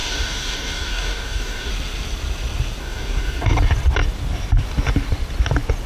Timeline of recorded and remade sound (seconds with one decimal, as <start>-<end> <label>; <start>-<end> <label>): 0.0-1.7 remade; 1.7-2.8 recorded; 2.8-3.4 remade; 3.4-5.9 recorded